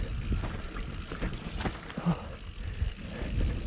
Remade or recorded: recorded